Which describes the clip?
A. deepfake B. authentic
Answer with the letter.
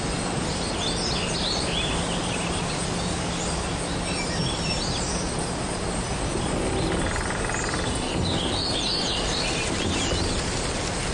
B